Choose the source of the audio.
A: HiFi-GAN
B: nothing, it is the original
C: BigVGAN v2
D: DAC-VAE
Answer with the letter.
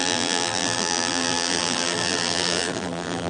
C